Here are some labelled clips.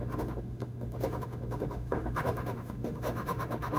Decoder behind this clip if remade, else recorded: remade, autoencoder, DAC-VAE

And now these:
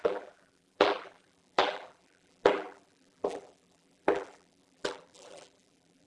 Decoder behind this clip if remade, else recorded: remade, vocoder, BigVGAN v2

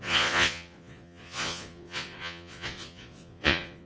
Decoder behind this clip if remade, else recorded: remade, vocoder, Vocos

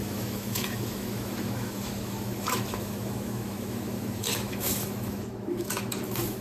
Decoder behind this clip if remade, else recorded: remade, autoencoder, DAC-VAE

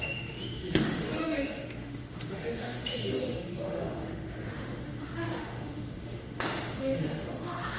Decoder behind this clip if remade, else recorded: remade, autoencoder, DAC-VAE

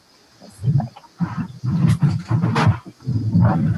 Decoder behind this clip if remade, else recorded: recorded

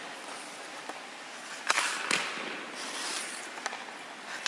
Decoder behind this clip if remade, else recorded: recorded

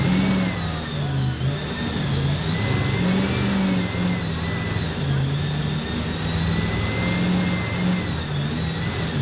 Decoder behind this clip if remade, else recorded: recorded